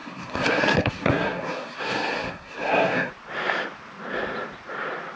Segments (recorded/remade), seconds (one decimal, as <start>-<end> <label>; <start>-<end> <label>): 0.0-3.1 remade; 3.1-5.2 recorded